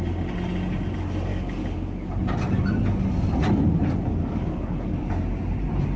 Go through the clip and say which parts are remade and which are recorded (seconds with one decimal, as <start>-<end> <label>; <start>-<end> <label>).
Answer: 0.0-1.3 recorded; 1.3-2.1 remade; 2.1-4.2 recorded; 4.2-5.1 remade; 5.1-6.0 recorded

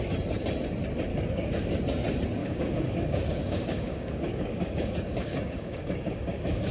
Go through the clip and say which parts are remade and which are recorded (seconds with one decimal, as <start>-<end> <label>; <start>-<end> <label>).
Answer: 0.0-1.1 recorded; 1.1-1.8 remade; 1.8-2.4 recorded; 2.4-6.7 remade

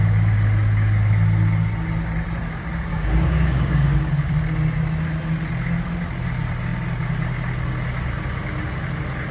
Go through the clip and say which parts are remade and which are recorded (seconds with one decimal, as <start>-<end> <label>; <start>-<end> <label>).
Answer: 0.0-2.9 recorded; 2.9-4.3 remade; 4.3-9.3 recorded

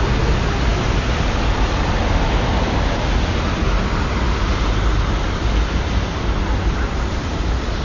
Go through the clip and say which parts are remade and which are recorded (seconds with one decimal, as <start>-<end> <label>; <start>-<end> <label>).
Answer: 0.0-7.8 recorded

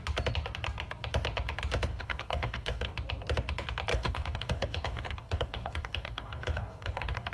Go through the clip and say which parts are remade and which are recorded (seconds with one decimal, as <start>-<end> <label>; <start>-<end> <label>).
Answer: 0.0-1.9 recorded; 1.9-2.9 remade; 2.9-3.9 recorded; 3.9-7.3 remade

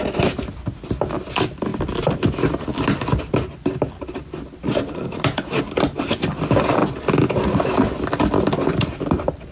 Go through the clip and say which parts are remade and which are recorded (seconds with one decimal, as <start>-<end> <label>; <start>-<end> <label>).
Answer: 0.0-9.5 recorded

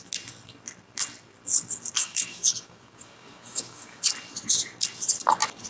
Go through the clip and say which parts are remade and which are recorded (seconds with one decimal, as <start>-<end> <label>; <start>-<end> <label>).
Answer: 0.0-2.0 recorded; 2.0-4.0 remade; 4.0-5.7 recorded